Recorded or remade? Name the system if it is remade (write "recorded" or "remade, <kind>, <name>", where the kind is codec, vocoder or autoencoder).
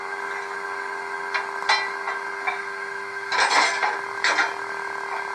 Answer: recorded